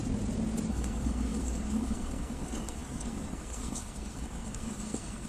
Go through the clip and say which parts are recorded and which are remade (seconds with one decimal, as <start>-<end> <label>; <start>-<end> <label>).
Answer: 0.0-0.7 recorded; 0.7-5.3 remade